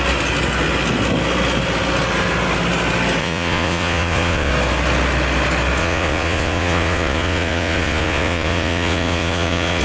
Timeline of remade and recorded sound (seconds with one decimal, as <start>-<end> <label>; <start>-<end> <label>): 0.0-3.2 recorded; 3.2-4.5 remade; 4.5-5.8 recorded; 5.8-9.8 remade